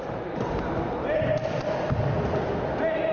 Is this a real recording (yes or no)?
yes